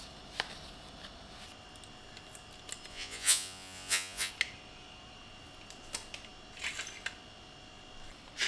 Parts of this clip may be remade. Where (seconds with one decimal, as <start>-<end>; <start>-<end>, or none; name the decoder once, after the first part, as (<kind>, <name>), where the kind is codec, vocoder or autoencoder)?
2.9-4.3 (vocoder, Vocos)